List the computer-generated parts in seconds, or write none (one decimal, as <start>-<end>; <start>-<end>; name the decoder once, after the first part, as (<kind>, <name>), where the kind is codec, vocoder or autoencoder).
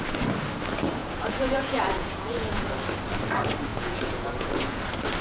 1.0-2.7 (vocoder, Vocos); 3.7-4.8